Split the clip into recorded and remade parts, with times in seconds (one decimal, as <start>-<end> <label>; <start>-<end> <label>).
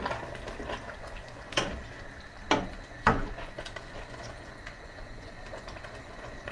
0.0-1.0 recorded; 1.0-1.7 remade; 1.7-2.7 recorded; 2.7-6.5 remade